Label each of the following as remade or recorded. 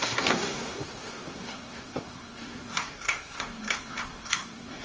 remade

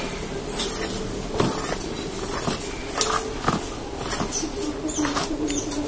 recorded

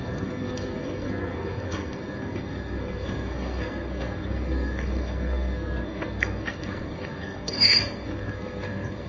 remade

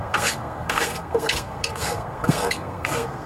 remade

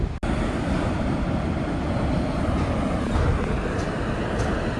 recorded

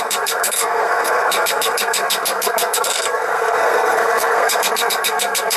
remade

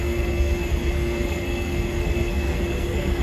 remade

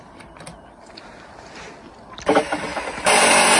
recorded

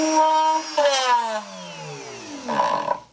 recorded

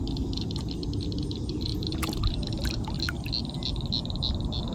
recorded